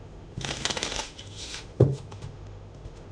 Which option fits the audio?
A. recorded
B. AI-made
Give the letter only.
B